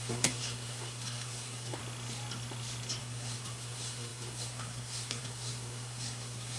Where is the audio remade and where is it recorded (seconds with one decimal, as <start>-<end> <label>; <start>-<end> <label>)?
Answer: 0.0-1.8 remade; 1.8-3.0 recorded; 3.0-6.6 remade